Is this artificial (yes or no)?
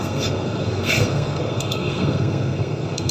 yes